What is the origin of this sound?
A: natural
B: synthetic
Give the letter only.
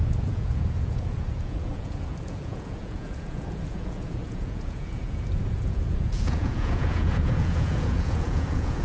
B